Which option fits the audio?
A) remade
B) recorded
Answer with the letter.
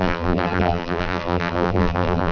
A